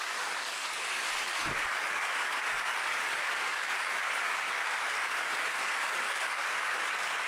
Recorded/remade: remade